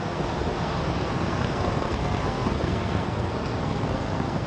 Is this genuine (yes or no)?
no